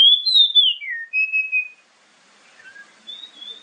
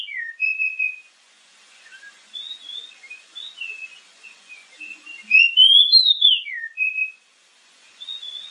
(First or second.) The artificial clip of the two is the second